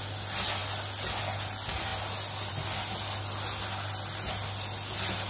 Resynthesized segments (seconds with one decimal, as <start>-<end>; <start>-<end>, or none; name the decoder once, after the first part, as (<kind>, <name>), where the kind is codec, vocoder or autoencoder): none